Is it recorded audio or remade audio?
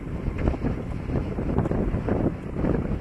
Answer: remade